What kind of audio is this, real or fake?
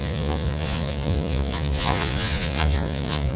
fake